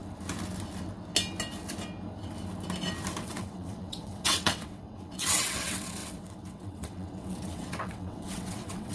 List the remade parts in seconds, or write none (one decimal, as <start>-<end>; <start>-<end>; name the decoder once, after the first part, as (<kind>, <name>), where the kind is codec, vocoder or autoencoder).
3.2-8.9 (vocoder, WaveNeXt)